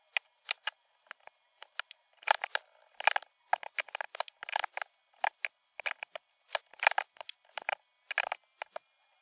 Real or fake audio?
real